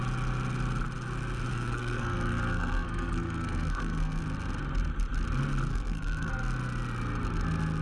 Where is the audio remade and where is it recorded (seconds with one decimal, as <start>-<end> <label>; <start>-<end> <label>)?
0.0-1.5 recorded; 1.5-4.2 remade; 4.2-5.7 recorded; 5.7-6.3 remade; 6.3-7.8 recorded